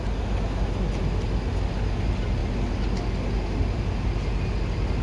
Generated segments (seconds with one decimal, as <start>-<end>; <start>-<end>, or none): none